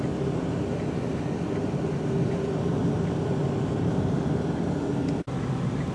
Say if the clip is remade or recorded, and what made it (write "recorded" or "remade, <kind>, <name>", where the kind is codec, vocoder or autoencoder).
recorded